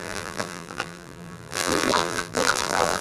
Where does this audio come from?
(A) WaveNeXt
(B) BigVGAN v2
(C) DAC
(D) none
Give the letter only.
B